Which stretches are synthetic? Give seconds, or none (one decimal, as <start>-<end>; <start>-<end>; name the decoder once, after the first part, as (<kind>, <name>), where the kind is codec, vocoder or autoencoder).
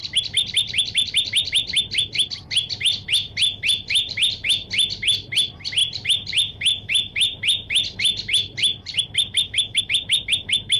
none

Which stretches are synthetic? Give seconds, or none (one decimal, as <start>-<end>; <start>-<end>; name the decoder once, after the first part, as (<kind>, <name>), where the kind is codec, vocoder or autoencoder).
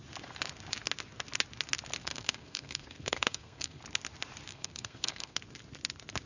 2.0-3.8 (codec, SNAC); 4.5-5.4